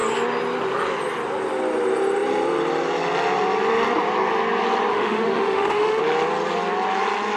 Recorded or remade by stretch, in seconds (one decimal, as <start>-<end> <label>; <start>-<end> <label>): 0.0-4.9 recorded; 4.9-6.0 remade; 6.0-7.4 recorded